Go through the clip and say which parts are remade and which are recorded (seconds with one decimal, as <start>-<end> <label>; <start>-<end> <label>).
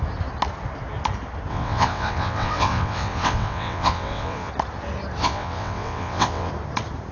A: 0.0-1.5 recorded; 1.5-4.5 remade; 4.5-5.2 recorded; 5.2-6.5 remade; 6.5-7.1 recorded